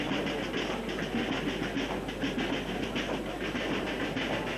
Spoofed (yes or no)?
no